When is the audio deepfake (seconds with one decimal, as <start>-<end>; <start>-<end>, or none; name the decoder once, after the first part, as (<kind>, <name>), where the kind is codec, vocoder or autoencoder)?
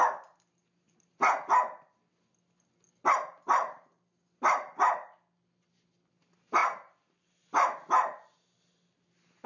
none